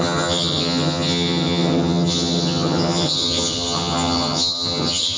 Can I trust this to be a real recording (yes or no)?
no